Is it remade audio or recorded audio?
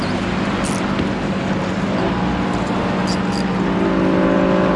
recorded